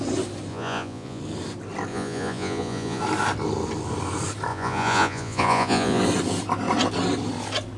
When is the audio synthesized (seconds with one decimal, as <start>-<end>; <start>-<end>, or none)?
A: 0.5-1.2; 1.9-3.0; 4.5-6.0